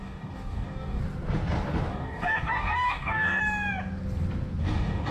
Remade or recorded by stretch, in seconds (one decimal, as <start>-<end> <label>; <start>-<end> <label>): 0.0-1.0 remade; 1.0-1.9 recorded; 1.9-3.4 remade; 3.4-4.6 recorded; 4.6-5.1 remade